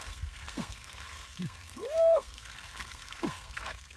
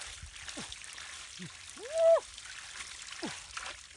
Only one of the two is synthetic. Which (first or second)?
first